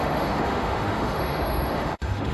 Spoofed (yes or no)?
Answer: yes